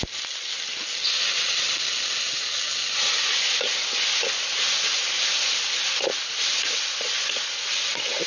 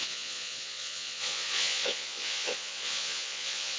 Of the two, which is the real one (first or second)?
first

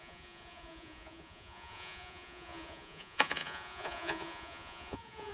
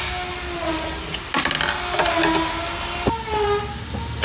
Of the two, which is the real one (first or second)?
second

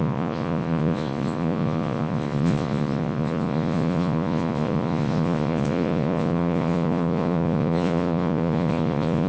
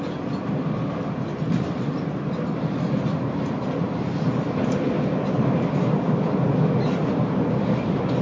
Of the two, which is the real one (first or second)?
second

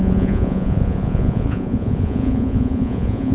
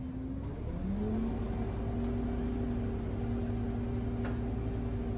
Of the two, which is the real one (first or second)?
second